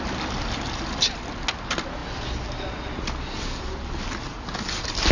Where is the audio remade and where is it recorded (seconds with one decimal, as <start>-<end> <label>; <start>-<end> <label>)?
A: 0.0-5.1 recorded